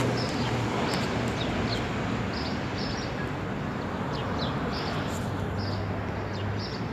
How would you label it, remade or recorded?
recorded